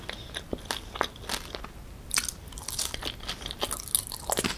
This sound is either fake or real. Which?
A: real